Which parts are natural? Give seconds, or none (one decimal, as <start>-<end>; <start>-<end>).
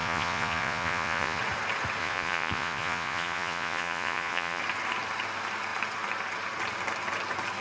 1.4-2.0; 4.6-7.6